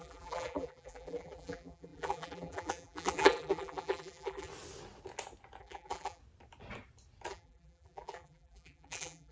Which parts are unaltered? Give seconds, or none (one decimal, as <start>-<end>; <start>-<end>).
4.5-5.6; 6.2-7.3